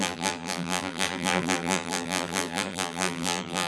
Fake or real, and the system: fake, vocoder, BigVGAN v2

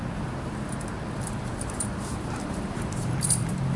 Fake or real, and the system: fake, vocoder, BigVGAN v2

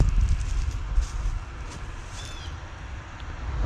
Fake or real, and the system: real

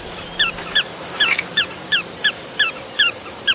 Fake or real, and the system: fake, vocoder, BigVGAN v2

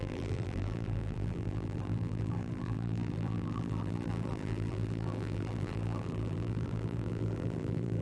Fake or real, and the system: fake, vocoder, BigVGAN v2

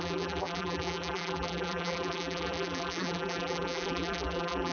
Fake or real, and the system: fake, vocoder, BigVGAN v2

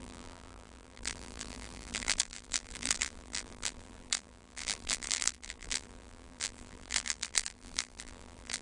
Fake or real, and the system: fake, vocoder, BigVGAN v2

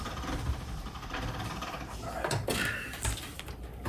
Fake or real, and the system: fake, vocoder, BigVGAN v2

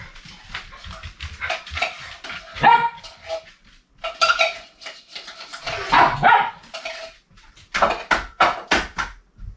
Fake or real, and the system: real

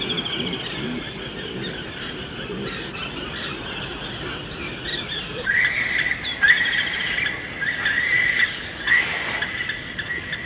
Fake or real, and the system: fake, vocoder, BigVGAN v2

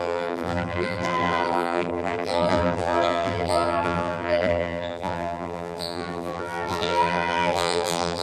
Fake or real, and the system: fake, vocoder, BigVGAN v2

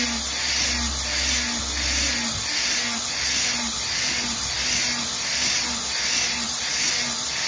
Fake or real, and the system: real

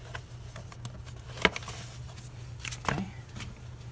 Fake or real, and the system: real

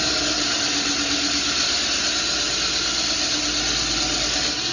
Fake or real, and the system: real